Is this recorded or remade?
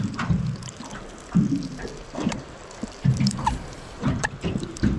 remade